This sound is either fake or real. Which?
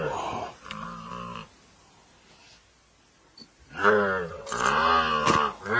real